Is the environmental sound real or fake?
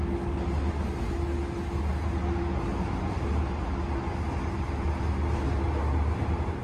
real